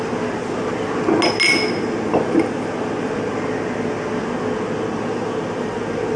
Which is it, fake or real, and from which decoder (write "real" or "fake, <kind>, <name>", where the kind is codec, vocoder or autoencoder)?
real